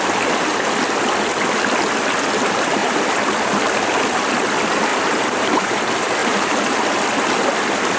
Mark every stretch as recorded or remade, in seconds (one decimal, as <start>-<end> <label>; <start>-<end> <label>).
0.0-4.9 recorded; 4.9-5.8 remade; 5.8-6.2 recorded; 6.2-6.8 remade; 6.8-8.0 recorded

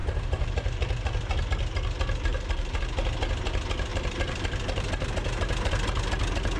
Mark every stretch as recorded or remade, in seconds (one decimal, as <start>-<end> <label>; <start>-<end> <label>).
0.0-1.4 remade; 1.4-2.3 recorded; 2.3-2.8 remade; 2.8-3.9 recorded; 3.9-5.7 remade; 5.7-6.6 recorded

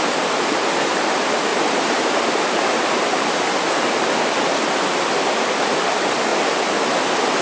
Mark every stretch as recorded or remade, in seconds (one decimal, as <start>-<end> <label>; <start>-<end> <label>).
0.0-1.5 recorded; 1.5-2.2 remade; 2.2-7.4 recorded

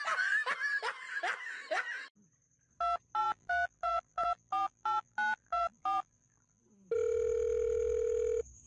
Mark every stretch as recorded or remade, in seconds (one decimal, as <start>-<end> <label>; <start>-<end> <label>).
0.0-3.2 recorded; 3.2-6.6 remade; 6.6-8.7 recorded

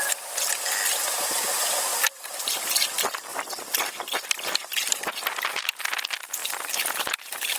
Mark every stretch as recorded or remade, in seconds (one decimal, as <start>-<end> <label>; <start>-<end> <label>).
0.0-1.9 recorded; 1.9-2.5 remade; 2.5-6.4 recorded; 6.4-7.6 remade